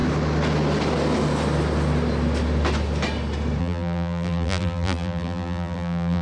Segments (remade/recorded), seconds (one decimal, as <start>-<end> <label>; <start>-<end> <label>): 0.0-3.6 recorded; 3.6-6.2 remade